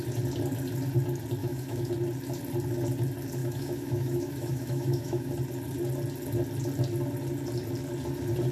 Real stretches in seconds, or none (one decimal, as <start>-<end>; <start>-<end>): 0.0-1.4; 1.9-3.4; 5.3-8.5